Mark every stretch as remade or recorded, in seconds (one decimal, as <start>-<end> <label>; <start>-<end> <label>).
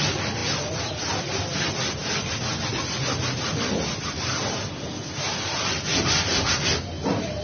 0.0-7.4 recorded